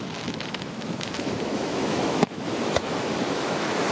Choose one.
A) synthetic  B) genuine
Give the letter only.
A